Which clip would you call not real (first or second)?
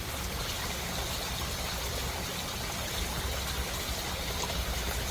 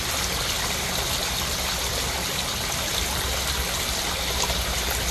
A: first